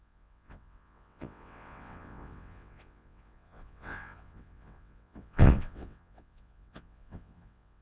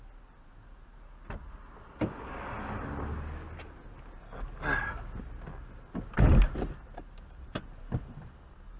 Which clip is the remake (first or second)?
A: first